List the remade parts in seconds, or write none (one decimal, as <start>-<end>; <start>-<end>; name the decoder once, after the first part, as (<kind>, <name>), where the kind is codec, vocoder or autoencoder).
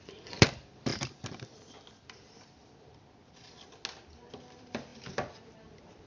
0.0-0.9 (vocoder, BigVGAN v2); 4.3-6.1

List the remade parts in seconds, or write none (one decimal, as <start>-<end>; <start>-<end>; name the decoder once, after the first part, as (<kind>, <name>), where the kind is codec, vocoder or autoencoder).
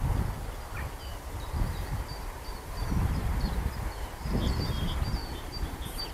1.1-3.8 (vocoder, BigVGAN v2); 5.2-6.1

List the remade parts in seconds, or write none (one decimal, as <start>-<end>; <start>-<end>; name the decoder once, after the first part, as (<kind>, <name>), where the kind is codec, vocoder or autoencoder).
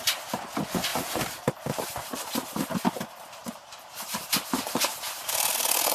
0.9-2.7 (vocoder, BigVGAN v2); 3.4-4.3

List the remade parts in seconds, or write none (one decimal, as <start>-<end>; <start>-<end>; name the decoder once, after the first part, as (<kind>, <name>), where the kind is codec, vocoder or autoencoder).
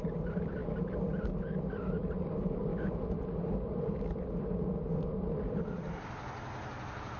0.0-0.6 (vocoder, BigVGAN v2); 2.0-2.7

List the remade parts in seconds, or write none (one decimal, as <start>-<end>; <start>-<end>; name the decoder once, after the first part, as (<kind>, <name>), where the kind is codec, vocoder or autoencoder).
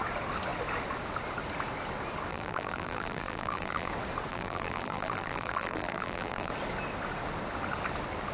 2.3-3.9 (vocoder, BigVGAN v2); 4.3-6.5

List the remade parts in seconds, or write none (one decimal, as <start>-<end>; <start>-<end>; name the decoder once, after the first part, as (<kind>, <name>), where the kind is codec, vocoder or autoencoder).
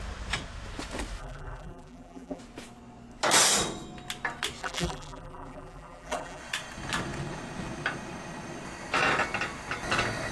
1.2-2.4 (vocoder, BigVGAN v2); 4.6-6.4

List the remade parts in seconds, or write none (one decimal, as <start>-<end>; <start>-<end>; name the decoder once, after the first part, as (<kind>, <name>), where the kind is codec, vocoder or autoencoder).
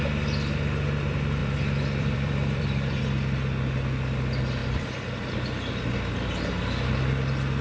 1.4-3.0 (vocoder, BigVGAN v2); 4.6-5.3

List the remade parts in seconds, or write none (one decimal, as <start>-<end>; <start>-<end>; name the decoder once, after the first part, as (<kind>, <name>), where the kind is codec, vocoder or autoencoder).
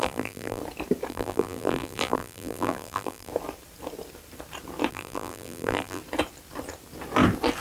0.0-0.6 (vocoder, BigVGAN v2); 1.1-3.3; 4.9-6.0